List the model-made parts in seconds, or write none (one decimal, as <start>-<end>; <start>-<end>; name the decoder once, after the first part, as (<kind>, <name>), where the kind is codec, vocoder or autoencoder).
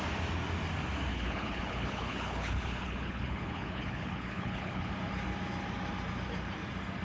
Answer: 1.1-4.9 (codec, HILCodec)